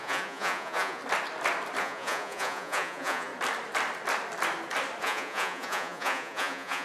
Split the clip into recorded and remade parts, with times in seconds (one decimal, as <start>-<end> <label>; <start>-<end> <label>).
0.0-1.0 remade; 1.0-1.8 recorded; 1.8-3.3 remade; 3.3-5.0 recorded; 5.0-6.8 remade